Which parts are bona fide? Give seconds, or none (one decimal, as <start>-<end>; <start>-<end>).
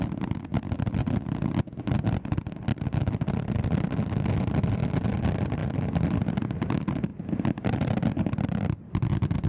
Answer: 0.0-9.5